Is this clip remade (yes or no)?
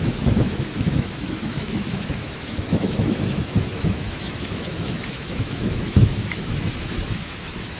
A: yes